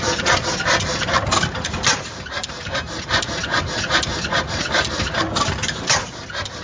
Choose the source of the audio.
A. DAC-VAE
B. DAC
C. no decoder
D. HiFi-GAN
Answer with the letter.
C